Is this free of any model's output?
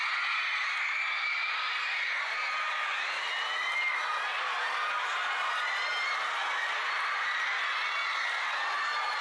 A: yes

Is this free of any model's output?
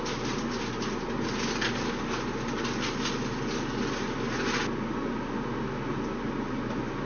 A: yes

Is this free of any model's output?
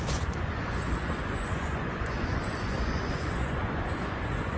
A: no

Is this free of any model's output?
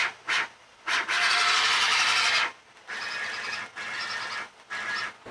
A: yes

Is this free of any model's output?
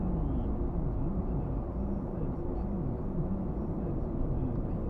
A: yes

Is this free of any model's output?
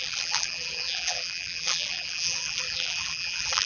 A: no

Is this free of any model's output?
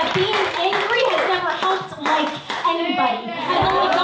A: yes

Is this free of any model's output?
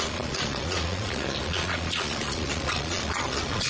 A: no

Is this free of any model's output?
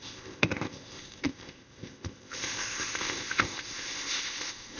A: no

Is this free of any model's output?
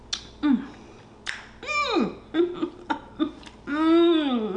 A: yes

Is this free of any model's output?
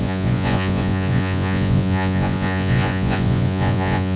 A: no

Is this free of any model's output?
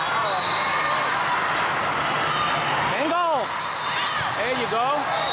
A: yes